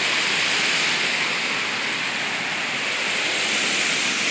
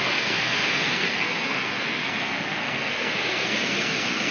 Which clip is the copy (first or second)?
second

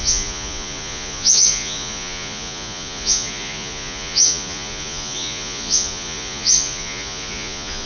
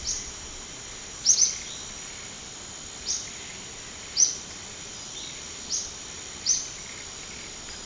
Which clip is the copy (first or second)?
first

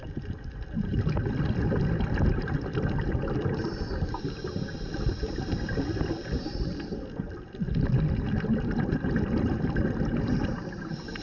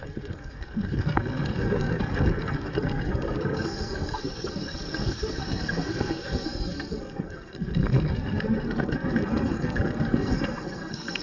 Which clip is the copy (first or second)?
second